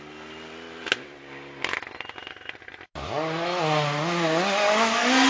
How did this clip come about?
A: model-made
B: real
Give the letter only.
B